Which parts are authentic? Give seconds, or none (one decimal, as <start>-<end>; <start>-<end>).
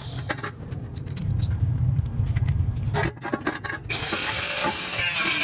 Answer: 0.0-5.4